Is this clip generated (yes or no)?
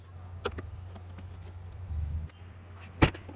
no